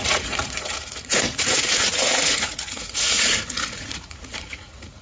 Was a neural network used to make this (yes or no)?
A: yes